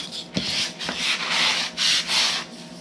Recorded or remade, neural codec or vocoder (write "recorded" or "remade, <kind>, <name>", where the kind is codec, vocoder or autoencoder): recorded